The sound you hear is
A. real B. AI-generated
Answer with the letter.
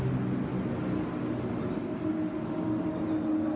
A